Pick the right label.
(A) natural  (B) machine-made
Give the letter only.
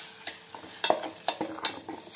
A